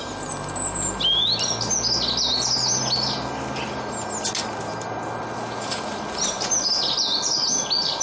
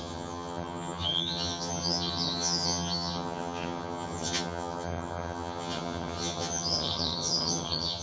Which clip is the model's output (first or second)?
second